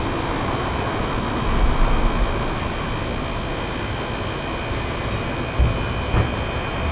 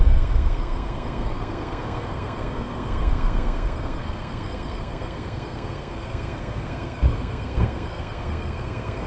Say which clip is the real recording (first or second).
first